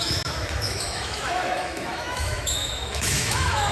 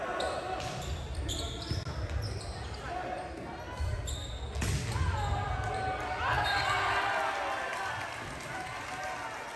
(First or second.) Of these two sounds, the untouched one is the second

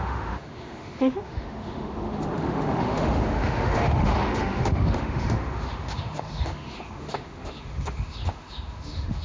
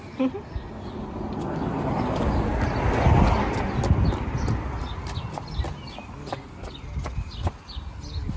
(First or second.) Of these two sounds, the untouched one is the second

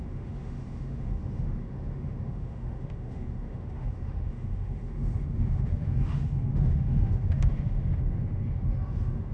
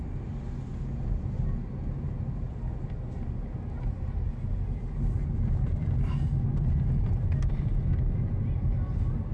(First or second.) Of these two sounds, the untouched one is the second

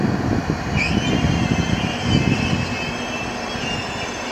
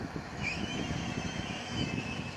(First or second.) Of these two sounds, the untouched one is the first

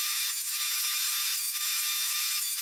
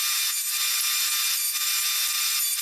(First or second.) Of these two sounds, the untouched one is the second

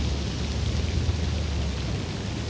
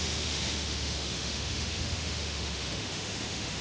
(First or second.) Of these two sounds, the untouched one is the first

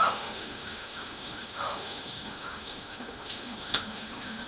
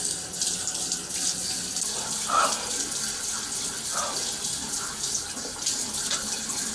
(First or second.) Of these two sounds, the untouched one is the second